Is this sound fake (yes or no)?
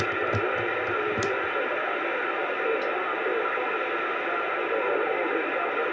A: no